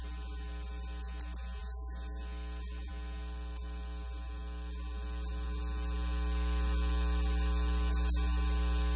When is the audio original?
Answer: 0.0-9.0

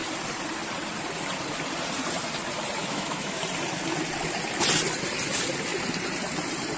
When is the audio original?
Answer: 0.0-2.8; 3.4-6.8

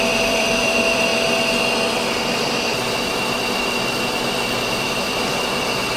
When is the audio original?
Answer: 1.1-4.7